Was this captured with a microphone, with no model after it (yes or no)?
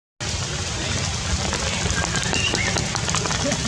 yes